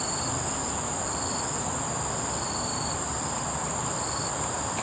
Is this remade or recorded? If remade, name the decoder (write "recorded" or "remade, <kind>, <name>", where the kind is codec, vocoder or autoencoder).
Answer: recorded